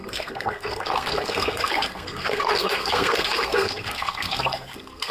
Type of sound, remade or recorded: remade